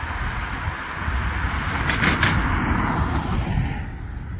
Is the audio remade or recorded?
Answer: recorded